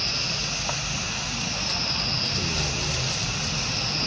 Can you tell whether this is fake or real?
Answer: real